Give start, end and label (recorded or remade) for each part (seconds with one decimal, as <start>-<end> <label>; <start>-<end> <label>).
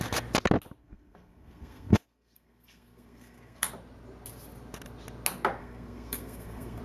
0.0-0.8 recorded; 0.8-3.7 remade; 3.7-5.6 recorded; 5.6-6.8 remade